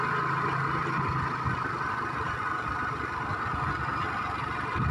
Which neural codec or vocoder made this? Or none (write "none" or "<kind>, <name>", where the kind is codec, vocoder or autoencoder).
none